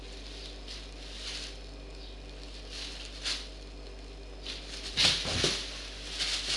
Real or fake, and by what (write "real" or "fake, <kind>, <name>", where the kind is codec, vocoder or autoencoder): real